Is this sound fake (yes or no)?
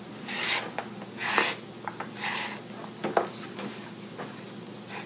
no